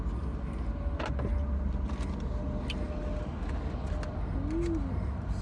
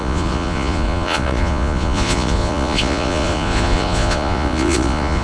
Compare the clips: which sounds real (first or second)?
first